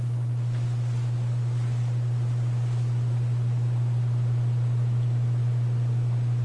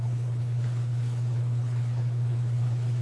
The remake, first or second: second